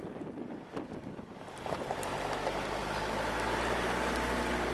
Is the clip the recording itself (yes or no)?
yes